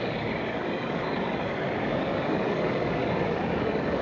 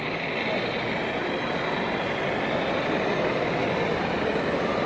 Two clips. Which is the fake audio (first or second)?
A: first